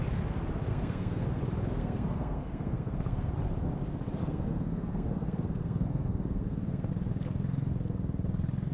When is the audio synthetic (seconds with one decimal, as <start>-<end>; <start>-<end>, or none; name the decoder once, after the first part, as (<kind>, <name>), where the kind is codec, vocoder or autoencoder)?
0.7-1.4 (codec, SNAC); 1.8-3.3; 4.2-6.9